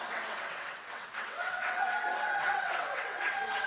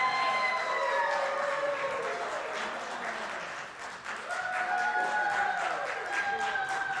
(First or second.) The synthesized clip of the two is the first